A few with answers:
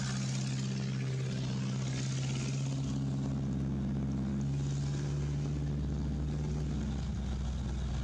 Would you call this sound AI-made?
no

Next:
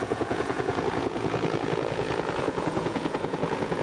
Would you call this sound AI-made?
yes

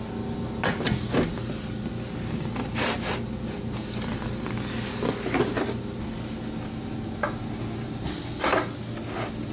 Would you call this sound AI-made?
no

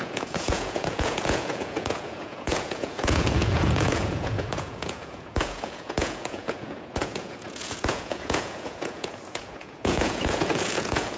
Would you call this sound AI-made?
yes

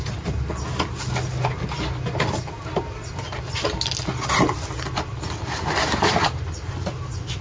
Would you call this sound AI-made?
no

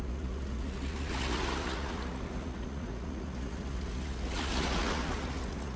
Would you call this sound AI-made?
yes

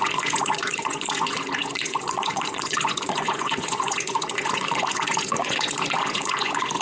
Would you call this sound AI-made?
yes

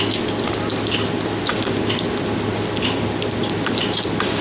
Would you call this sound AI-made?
no